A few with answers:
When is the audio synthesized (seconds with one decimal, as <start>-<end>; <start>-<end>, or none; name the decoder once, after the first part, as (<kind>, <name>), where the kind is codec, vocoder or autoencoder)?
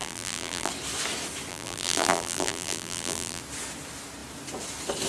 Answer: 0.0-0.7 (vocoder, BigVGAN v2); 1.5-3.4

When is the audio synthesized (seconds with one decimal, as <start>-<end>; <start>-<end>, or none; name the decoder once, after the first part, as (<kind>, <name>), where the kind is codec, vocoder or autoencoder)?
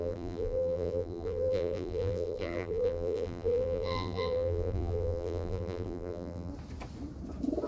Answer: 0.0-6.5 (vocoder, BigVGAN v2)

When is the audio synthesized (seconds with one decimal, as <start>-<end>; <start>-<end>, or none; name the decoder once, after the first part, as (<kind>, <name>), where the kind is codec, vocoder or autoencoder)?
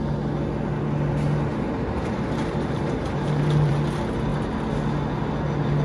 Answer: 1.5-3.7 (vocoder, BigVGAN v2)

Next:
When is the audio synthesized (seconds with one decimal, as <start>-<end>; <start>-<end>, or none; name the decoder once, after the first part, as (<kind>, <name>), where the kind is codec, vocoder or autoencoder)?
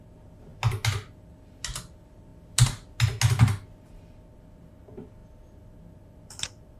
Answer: none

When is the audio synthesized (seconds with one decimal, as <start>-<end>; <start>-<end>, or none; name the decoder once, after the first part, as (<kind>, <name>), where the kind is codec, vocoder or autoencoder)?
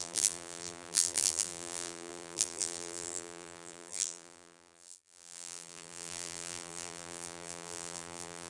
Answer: 0.0-8.5 (vocoder, BigVGAN v2)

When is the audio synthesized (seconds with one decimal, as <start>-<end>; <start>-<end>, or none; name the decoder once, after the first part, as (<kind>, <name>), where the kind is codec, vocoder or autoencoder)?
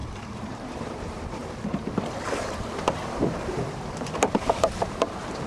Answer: 0.0-1.4 (vocoder, BigVGAN v2); 3.7-5.5